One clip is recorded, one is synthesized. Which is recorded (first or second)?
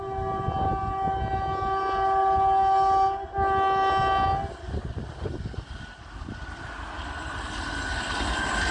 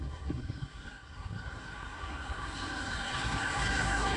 first